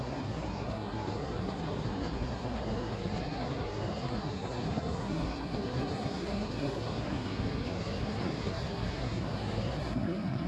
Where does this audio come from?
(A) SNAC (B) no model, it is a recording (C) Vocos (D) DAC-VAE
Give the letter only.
A